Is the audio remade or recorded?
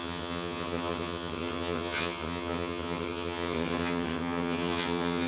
remade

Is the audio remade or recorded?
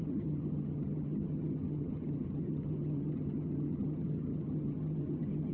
remade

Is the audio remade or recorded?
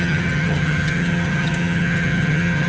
remade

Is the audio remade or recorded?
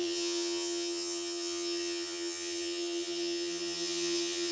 remade